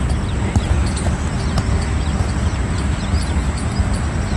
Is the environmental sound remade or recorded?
recorded